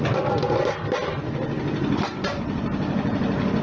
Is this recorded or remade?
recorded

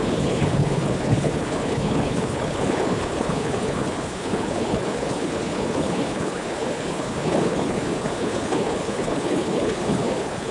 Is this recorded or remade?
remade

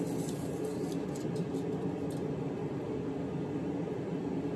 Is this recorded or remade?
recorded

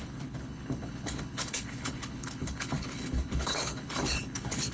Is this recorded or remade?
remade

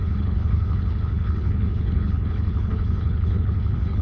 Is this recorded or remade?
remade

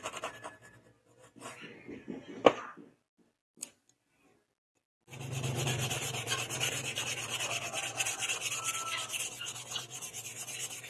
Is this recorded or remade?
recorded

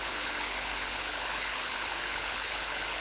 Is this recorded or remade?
remade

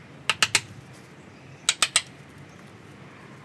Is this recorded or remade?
recorded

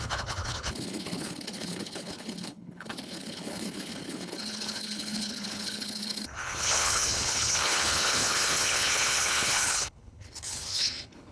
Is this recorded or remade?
remade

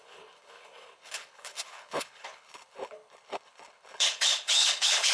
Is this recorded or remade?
remade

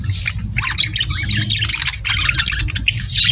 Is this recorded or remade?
recorded